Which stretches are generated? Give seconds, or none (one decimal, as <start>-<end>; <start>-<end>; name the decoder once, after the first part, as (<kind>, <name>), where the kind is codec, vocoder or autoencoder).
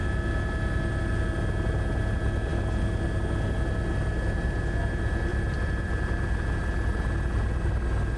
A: 5.3-6.6 (vocoder, BigVGAN v2)